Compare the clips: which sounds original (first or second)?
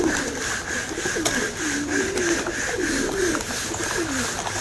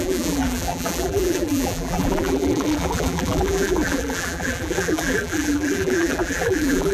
first